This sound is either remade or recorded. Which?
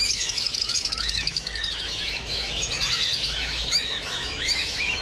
remade